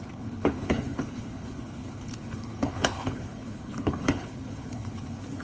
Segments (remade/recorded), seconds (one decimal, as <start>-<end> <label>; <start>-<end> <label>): 0.0-5.4 remade